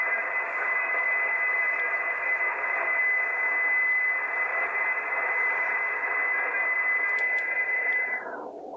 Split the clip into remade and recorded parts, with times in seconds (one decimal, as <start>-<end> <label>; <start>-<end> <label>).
0.0-4.5 recorded; 4.5-6.1 remade; 6.1-7.6 recorded; 7.6-8.8 remade